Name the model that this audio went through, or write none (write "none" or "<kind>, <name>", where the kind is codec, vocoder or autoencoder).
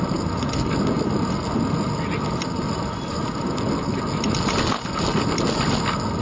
none